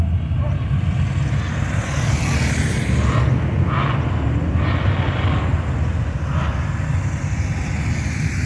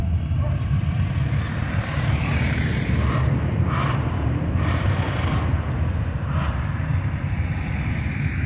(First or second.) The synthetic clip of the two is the second